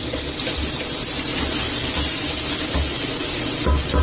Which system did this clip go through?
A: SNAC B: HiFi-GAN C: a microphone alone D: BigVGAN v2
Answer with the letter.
C